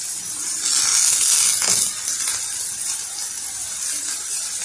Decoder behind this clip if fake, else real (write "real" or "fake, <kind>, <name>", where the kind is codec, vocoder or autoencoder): real